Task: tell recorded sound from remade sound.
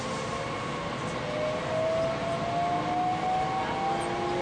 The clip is recorded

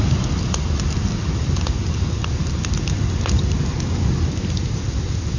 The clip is recorded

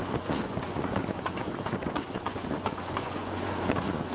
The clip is remade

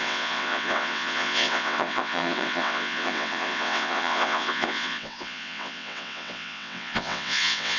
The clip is remade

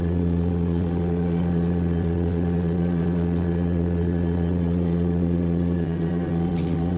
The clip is remade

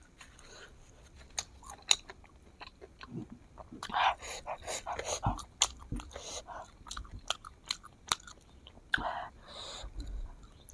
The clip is recorded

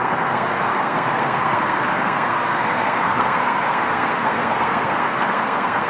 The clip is remade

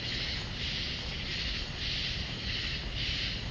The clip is recorded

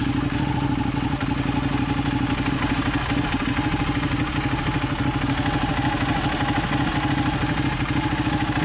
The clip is recorded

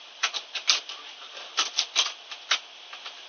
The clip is recorded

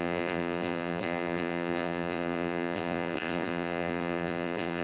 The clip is remade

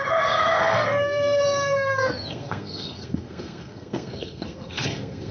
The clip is remade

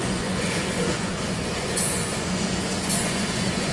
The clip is remade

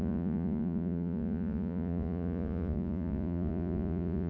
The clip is remade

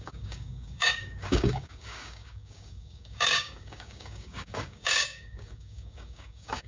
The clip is remade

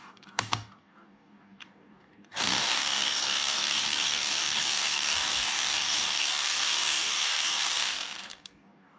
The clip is remade